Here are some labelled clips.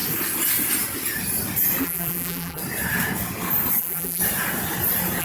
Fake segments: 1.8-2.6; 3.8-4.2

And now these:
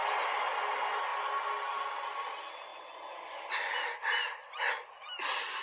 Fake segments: none

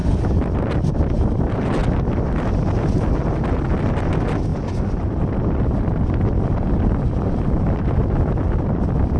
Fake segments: 0.9-1.8; 3.8-9.2

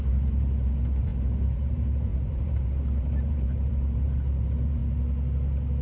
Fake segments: 0.0-4.8

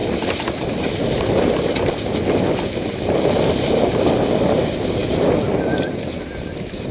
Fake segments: 5.0-6.9

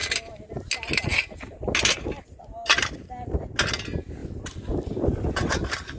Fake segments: 0.0-0.5; 4.2-5.5

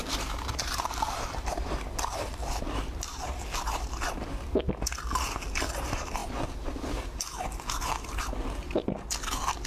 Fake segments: 0.0-4.4

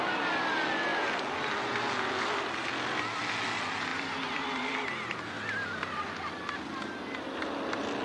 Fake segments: 3.9-7.4